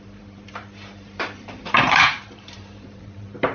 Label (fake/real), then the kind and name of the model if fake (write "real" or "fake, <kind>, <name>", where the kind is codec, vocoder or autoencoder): fake, vocoder, BigVGAN v2